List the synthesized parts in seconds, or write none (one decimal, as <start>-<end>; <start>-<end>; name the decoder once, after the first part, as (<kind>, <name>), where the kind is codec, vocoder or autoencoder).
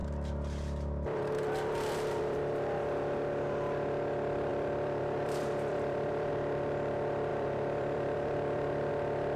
0.0-2.5 (vocoder, BigVGAN v2); 4.5-6.3; 7.3-8.9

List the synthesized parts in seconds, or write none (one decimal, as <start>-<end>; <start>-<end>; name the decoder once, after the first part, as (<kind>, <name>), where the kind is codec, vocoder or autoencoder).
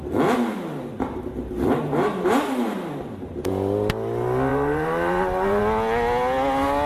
0.9-3.5 (vocoder, BigVGAN v2); 4.5-5.6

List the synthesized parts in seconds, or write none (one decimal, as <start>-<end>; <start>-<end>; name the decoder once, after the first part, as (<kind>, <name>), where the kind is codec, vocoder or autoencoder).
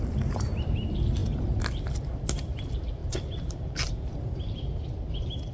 none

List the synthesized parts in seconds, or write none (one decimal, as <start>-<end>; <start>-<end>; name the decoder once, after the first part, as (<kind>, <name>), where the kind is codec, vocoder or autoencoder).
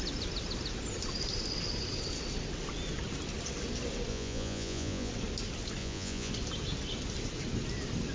4.1-5.1 (vocoder, Vocos); 5.8-6.3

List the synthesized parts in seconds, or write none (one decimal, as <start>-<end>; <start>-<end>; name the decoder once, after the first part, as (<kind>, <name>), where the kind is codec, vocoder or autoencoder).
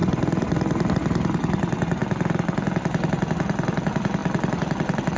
0.0-0.9 (vocoder, BigVGAN v2); 2.0-3.3; 4.2-5.2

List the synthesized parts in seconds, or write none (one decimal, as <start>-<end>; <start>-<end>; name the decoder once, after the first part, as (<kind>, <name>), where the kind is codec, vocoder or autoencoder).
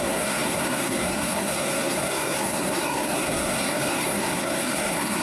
0.0-5.2 (codec, SNAC)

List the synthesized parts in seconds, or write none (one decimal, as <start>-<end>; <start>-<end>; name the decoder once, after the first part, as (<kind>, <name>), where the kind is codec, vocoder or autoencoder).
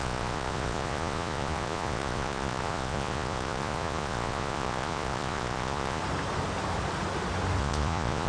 0.0-6.0 (vocoder, Vocos); 7.6-8.3